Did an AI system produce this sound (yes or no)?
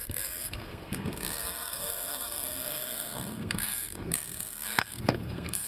yes